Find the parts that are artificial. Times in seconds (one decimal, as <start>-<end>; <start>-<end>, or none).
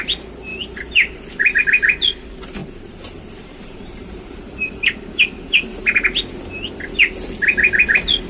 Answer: 0.5-1.6; 2.6-4.4